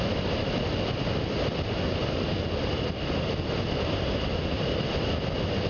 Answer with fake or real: real